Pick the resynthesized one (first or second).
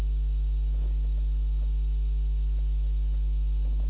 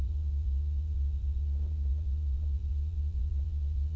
second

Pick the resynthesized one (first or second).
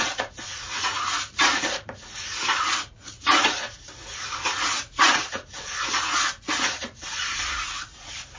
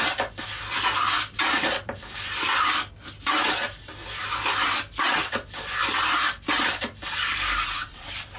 first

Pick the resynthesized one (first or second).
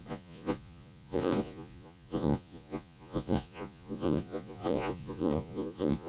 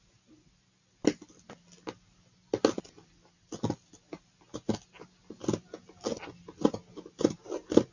first